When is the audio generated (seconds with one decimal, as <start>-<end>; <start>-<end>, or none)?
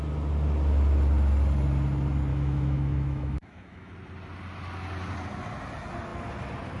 2.3-3.9